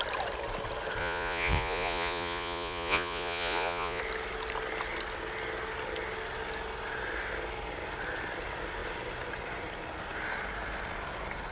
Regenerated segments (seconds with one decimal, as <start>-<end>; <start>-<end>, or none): 1.0-4.0